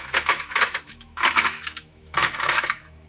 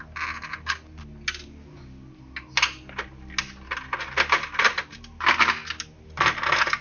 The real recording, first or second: second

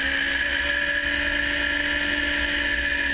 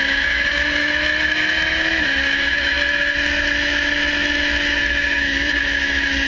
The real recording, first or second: first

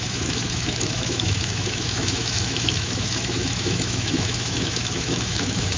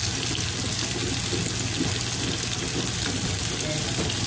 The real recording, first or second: second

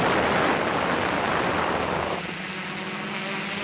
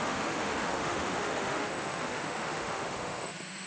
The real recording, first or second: first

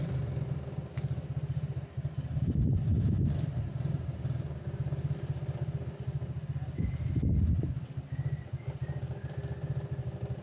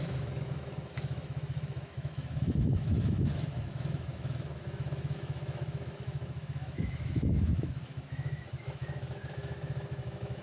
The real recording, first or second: first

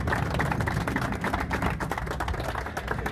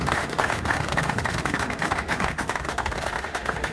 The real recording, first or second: first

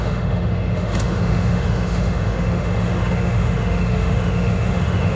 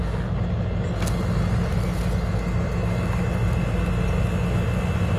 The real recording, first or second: second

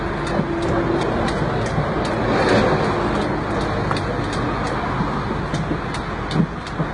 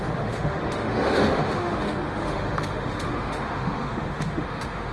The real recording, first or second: first